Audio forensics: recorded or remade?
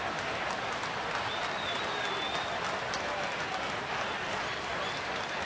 recorded